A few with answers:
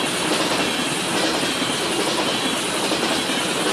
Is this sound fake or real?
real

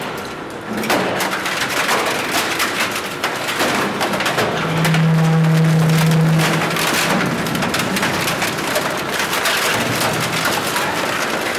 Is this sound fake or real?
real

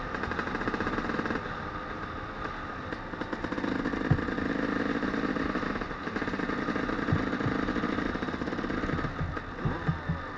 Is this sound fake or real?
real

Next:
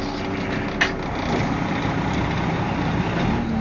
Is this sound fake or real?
real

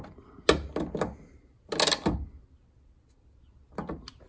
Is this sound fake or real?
real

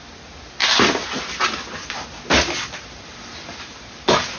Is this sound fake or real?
real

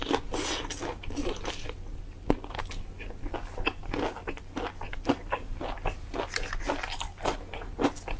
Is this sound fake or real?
real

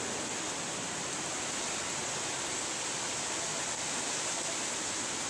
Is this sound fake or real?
real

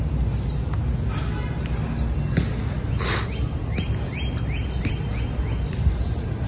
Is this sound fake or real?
real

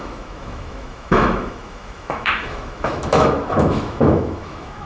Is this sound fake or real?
fake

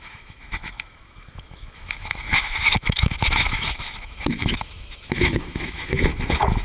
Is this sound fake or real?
fake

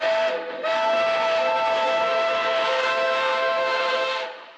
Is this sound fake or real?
fake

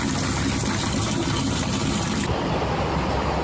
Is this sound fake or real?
real